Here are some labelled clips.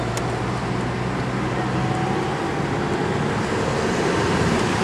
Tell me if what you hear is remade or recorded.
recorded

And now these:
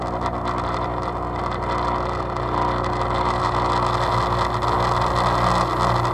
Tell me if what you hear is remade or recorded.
recorded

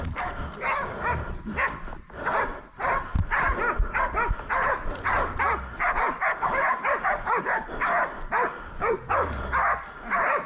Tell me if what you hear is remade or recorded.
recorded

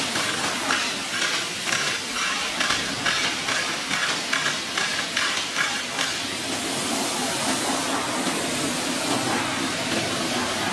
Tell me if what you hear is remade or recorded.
recorded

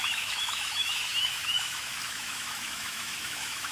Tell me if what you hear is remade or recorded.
remade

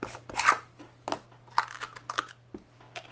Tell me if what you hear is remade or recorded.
recorded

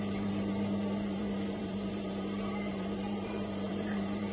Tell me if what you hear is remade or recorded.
remade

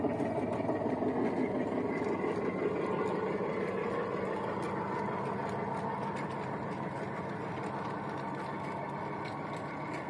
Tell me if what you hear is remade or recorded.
recorded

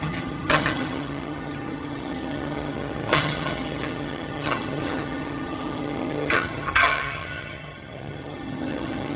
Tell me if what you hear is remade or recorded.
remade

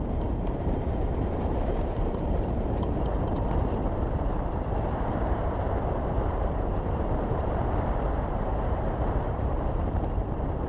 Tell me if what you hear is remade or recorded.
remade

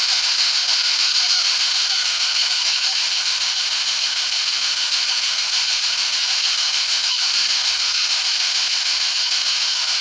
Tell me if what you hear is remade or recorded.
remade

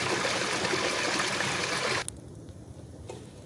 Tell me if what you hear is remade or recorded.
recorded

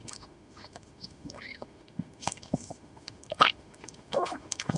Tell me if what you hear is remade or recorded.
remade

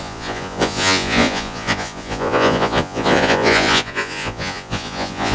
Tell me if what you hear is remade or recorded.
remade